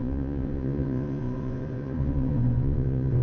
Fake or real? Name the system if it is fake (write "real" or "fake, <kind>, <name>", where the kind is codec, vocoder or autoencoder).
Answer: fake, vocoder, Vocos